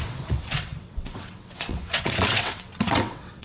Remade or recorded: remade